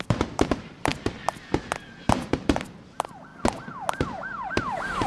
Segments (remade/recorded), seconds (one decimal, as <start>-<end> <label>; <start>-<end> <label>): 0.0-0.9 remade; 0.9-2.3 recorded; 2.3-3.3 remade; 3.3-4.5 recorded; 4.5-5.1 remade